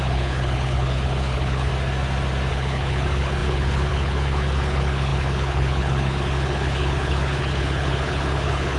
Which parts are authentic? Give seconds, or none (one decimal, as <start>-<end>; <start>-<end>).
1.7-2.5